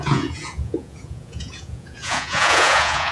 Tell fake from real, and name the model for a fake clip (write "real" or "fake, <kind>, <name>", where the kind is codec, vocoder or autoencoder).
fake, vocoder, Vocos